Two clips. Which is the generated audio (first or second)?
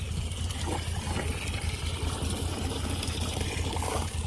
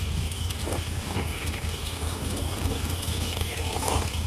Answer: second